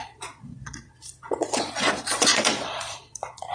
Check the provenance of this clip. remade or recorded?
remade